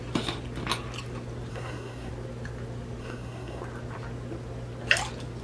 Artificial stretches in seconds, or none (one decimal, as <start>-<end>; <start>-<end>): 1.5-2.1; 3.0-3.6